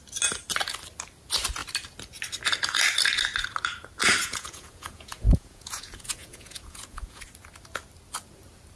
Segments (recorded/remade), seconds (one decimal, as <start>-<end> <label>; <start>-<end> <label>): 0.0-4.2 recorded; 4.2-7.2 remade; 7.2-8.8 recorded